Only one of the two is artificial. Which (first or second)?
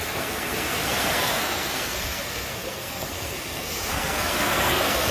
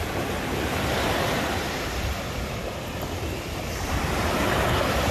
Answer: first